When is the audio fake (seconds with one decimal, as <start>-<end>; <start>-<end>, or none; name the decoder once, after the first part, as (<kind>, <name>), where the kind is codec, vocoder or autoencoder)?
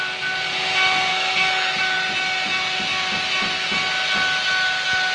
1.1-1.8 (autoencoder, DAC-VAE)